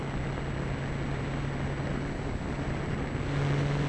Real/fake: real